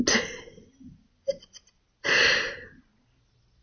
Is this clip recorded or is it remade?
recorded